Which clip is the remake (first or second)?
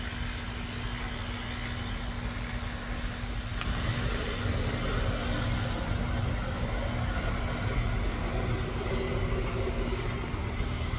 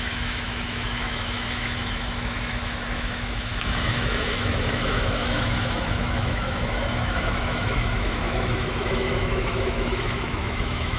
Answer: second